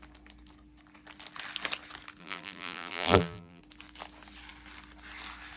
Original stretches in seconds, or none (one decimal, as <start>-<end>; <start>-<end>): 0.0-2.2; 3.6-5.6